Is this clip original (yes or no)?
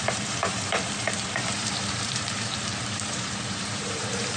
no